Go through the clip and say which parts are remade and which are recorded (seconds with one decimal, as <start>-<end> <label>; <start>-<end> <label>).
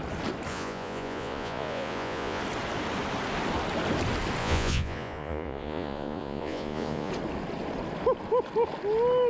0.0-0.5 recorded; 0.5-2.4 remade; 2.4-4.4 recorded; 4.4-7.1 remade; 7.1-9.3 recorded